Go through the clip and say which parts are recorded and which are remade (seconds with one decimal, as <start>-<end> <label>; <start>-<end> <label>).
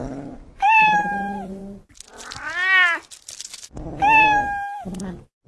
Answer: 0.0-1.6 remade; 1.6-5.5 recorded